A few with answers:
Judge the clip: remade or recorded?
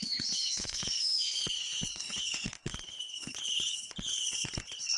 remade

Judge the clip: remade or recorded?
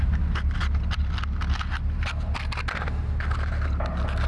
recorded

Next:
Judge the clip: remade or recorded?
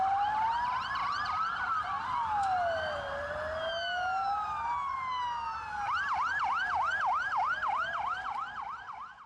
recorded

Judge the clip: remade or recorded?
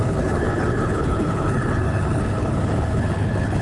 remade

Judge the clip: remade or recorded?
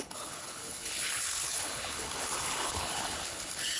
remade